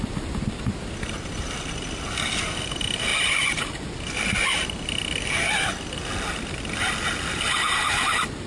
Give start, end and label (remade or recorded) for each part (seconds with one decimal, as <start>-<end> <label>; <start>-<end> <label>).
0.0-8.5 recorded